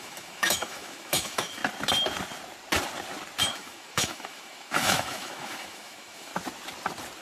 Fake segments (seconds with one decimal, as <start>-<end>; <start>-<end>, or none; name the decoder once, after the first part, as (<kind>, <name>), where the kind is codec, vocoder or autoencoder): 0.0-1.6 (autoencoder, DAC-VAE); 3.4-6.3